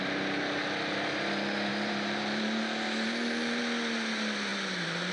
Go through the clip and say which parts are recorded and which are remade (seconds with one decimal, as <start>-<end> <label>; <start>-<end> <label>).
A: 0.0-1.7 recorded; 1.7-3.6 remade; 3.6-5.1 recorded